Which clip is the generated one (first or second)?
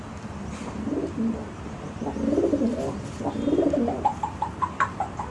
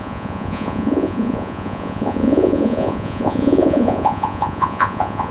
second